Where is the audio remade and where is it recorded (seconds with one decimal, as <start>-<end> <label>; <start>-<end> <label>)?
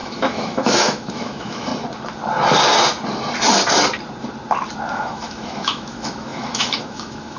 0.0-1.7 remade; 1.7-4.9 recorded; 4.9-7.4 remade